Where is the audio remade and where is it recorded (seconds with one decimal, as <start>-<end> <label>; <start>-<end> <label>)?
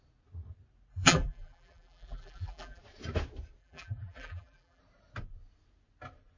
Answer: 0.0-0.9 recorded; 0.9-2.8 remade; 2.8-3.6 recorded; 3.6-4.8 remade; 4.8-6.4 recorded